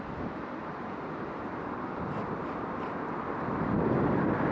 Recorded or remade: remade